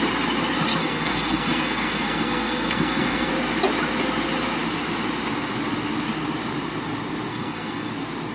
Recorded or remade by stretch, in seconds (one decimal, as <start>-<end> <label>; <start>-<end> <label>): 0.0-0.8 recorded; 0.8-3.3 remade; 3.3-7.3 recorded; 7.3-7.9 remade; 7.9-8.3 recorded